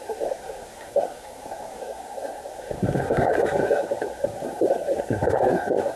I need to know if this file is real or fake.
fake